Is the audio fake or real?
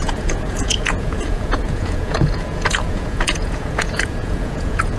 fake